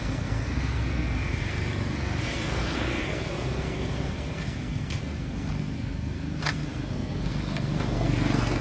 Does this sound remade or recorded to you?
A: remade